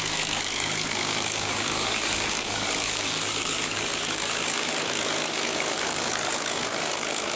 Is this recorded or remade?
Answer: remade